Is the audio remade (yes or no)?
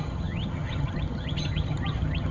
yes